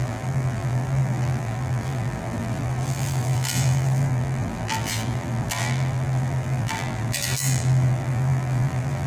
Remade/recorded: remade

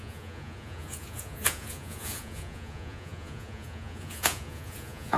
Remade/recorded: remade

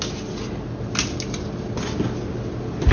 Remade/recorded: recorded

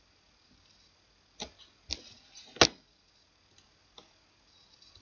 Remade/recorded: recorded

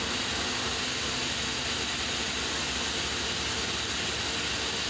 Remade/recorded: recorded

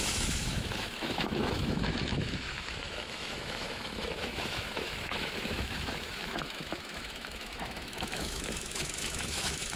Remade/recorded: remade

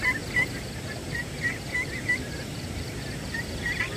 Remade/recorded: recorded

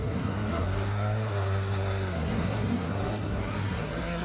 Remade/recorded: remade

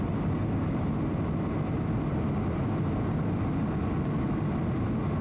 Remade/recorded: recorded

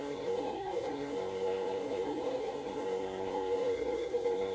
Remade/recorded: remade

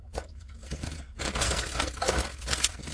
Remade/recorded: remade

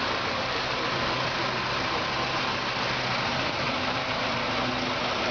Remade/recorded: recorded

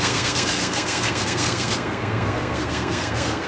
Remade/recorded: remade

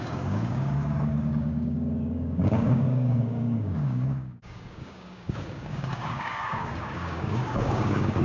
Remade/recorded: remade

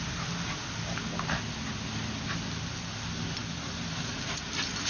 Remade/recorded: recorded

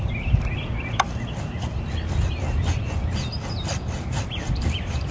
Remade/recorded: remade